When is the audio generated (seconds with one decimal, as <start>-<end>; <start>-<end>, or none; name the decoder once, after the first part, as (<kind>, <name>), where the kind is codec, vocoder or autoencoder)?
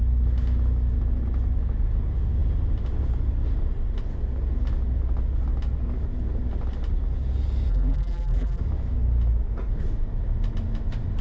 7.7-8.6 (vocoder, BigVGAN v2)